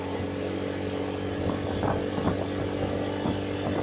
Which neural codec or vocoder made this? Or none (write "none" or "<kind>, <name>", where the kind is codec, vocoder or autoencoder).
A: none